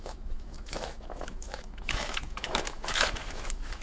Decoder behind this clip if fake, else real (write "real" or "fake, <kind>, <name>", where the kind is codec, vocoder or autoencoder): fake, autoencoder, DAC-VAE